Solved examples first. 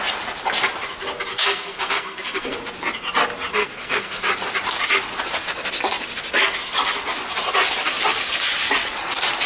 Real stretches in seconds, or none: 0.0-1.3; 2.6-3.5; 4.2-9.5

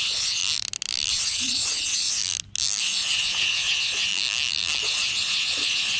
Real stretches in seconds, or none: 0.4-1.1; 2.2-2.8; 4.1-4.8

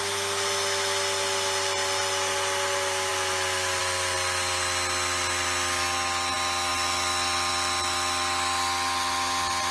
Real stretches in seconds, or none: 0.0-9.7

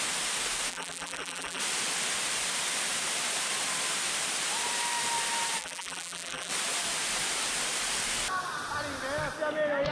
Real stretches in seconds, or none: 0.0-0.7; 1.6-5.6; 6.5-9.9

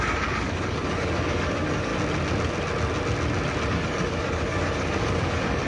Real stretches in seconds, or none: 1.9-3.7